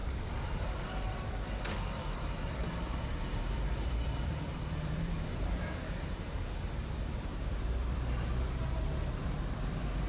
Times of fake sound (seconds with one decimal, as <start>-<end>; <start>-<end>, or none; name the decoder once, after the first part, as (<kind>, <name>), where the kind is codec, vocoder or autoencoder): 0.0-1.0 (vocoder, BigVGAN v2); 2.0-6.7; 7.3-9.1